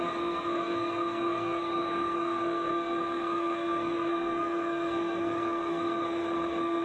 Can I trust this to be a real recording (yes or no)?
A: no